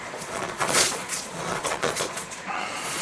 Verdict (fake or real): fake